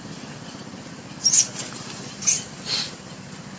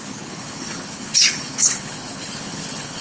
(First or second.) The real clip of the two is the first